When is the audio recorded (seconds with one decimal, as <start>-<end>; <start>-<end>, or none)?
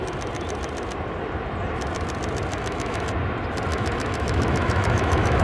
0.0-2.5; 3.1-3.7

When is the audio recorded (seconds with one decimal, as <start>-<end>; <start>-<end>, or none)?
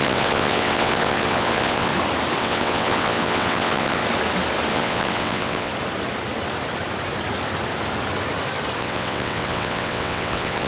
1.9-2.4; 4.0-4.7; 5.7-8.8